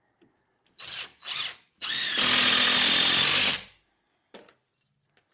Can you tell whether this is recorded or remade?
recorded